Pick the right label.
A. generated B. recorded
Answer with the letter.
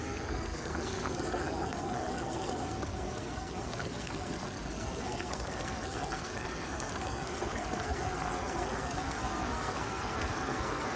A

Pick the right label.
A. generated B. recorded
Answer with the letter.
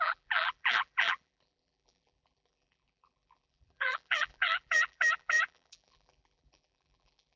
A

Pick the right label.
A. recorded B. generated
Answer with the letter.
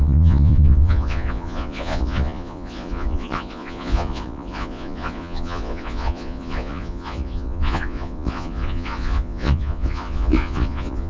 B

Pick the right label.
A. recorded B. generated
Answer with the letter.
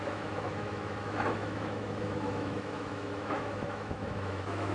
B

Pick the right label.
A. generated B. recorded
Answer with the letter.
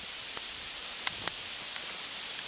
B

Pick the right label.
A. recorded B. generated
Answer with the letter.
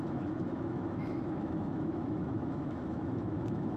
B